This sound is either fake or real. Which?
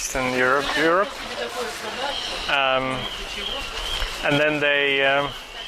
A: real